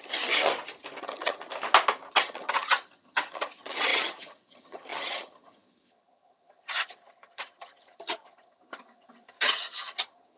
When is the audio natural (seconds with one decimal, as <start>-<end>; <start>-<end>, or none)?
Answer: 0.5-1.0; 1.5-2.1